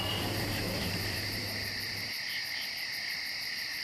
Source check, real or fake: fake